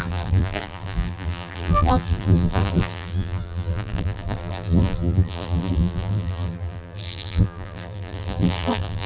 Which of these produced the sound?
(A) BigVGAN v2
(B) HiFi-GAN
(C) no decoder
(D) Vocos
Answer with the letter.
A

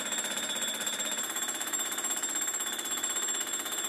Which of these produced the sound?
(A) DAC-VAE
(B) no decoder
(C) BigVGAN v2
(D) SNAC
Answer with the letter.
C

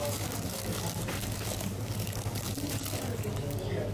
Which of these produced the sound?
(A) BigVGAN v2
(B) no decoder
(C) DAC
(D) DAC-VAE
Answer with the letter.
C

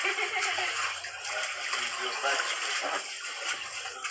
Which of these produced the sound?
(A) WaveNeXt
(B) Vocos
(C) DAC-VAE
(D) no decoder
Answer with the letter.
D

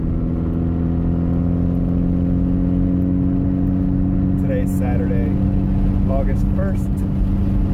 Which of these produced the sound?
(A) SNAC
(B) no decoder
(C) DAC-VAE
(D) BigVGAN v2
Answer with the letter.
B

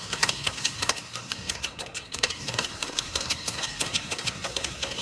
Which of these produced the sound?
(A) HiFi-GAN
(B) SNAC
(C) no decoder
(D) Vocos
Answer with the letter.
B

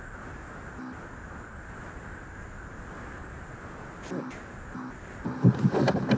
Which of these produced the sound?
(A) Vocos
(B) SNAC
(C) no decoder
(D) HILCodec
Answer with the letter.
C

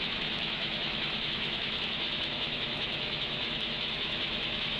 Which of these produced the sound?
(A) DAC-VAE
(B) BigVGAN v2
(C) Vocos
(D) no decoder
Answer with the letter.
A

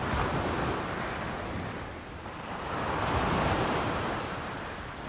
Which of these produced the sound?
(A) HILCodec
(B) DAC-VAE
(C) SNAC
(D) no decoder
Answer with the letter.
D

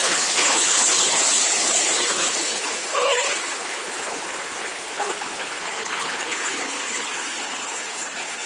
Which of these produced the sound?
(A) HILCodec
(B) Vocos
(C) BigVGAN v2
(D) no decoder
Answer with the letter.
A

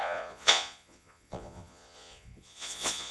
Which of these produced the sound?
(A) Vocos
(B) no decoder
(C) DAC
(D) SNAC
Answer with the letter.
A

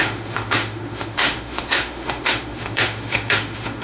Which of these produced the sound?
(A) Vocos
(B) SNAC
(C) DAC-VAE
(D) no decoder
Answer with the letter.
C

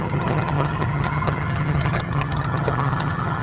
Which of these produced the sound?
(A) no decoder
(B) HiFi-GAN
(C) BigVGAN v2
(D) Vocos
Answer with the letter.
B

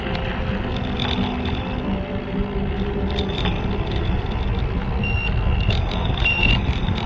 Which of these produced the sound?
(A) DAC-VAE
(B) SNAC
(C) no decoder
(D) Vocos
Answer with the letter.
C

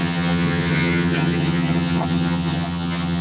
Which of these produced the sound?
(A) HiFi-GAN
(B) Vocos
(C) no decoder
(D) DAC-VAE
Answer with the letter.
A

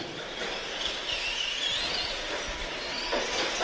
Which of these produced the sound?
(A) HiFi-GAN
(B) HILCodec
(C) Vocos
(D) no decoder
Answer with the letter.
D